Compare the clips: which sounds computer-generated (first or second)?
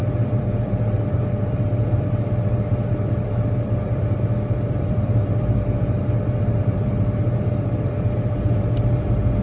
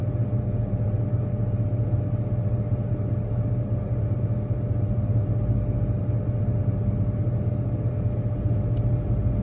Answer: first